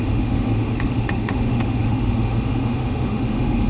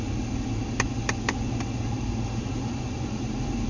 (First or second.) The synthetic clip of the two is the first